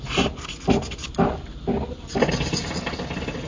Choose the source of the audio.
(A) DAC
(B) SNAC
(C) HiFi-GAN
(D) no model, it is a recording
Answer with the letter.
D